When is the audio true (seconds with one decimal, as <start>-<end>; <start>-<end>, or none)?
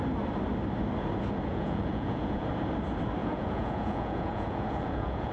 0.0-1.5; 2.5-3.2